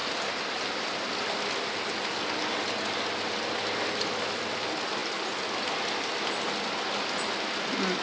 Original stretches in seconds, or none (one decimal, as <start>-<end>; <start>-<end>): 0.0-8.0